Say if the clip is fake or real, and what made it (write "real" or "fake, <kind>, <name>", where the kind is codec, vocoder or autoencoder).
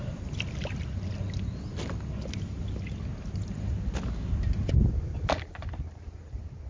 real